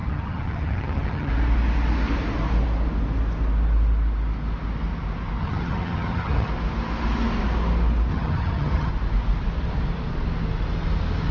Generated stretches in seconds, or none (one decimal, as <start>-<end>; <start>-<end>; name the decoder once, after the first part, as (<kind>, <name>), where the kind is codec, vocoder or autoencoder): 0.0-1.3 (vocoder, HiFi-GAN); 5.4-6.5; 8.1-8.9